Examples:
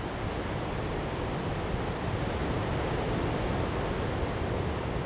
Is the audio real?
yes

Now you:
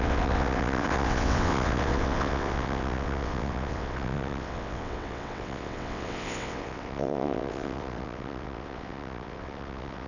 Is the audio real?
no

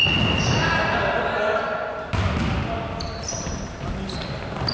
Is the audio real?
yes